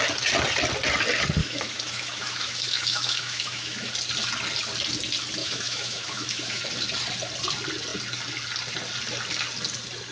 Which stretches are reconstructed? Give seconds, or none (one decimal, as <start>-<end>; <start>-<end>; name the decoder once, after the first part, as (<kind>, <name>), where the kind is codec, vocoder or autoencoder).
1.4-3.9 (autoencoder, DAC-VAE); 5.4-6.6